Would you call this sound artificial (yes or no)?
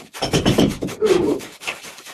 yes